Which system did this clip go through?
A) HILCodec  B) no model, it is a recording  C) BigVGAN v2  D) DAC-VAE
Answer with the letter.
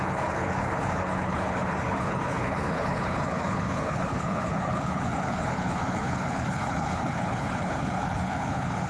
A